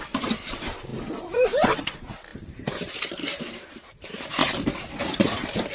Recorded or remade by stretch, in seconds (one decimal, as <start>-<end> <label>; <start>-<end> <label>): 0.0-0.9 remade; 0.9-1.8 recorded; 1.8-4.4 remade; 4.4-5.2 recorded; 5.2-5.7 remade